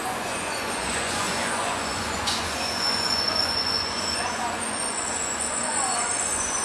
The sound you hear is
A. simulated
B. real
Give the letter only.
A